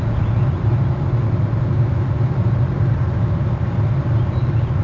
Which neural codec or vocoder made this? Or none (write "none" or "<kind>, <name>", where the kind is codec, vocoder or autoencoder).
none